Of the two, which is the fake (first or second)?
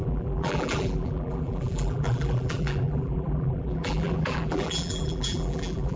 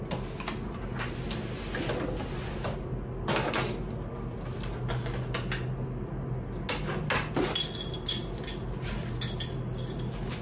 first